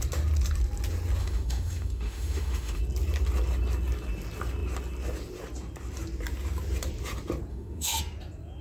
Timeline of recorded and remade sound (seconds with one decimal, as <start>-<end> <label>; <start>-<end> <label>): 0.0-1.2 recorded; 1.2-2.8 remade; 2.8-7.5 recorded; 7.5-8.0 remade; 8.0-8.6 recorded